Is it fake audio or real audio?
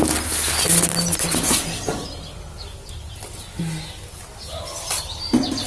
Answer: real